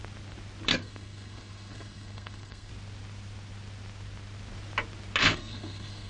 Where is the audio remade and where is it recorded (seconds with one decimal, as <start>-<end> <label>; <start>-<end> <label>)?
0.0-0.7 recorded; 0.7-2.7 remade; 2.7-5.2 recorded; 5.2-6.1 remade